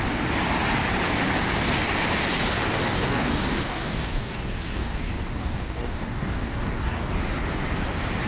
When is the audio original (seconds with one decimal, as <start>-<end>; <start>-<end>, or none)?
0.0-2.8; 5.0-5.4; 7.1-8.3